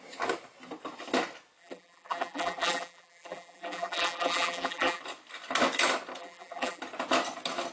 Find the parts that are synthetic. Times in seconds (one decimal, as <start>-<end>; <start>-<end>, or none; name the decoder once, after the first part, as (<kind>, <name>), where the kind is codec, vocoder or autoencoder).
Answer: 1.6-5.0 (vocoder, BigVGAN v2); 6.2-6.8